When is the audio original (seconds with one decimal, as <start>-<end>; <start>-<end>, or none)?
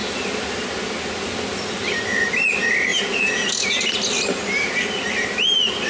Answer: 0.0-5.9